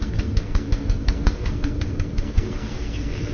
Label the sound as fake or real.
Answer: fake